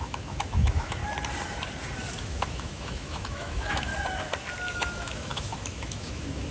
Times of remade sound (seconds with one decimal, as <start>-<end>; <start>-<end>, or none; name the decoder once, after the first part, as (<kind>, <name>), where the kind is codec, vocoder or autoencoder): 0.0-1.0 (autoencoder, DAC-VAE); 2.2-3.9; 4.7-6.5